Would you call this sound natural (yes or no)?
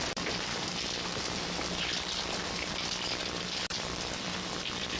no